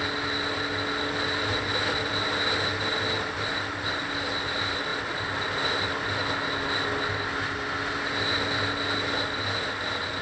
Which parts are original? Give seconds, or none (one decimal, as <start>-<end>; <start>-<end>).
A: 0.0-10.2

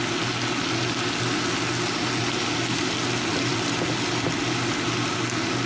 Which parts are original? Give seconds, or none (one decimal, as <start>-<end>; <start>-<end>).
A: 0.0-5.7

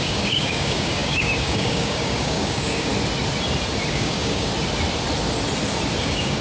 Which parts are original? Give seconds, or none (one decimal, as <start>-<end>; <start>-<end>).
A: 2.9-3.9; 4.5-6.0

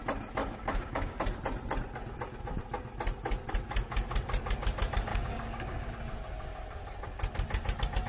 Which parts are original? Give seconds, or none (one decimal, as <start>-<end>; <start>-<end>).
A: 0.0-0.4; 1.2-5.1; 5.9-8.1

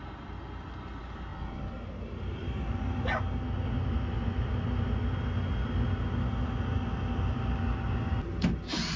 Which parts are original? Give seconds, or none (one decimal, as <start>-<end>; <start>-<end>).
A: 0.0-9.0

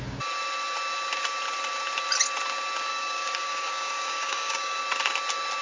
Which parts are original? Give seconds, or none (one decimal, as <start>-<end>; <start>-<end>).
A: 0.0-2.9; 4.8-5.6

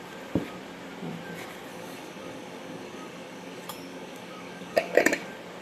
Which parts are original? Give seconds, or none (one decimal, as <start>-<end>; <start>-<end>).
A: 0.0-1.7; 5.1-5.6